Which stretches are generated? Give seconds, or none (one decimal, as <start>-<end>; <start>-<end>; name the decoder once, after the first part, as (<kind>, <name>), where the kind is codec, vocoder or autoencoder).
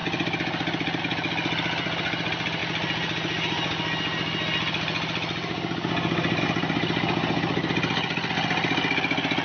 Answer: none